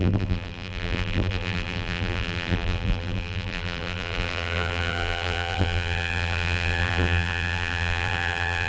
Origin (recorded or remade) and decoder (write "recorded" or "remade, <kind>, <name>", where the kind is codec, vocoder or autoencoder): remade, vocoder, BigVGAN v2